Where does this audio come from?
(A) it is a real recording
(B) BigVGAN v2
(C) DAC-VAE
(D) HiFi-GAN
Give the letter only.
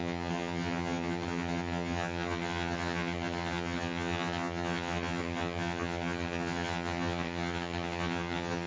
D